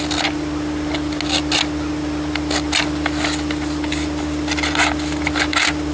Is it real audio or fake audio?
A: real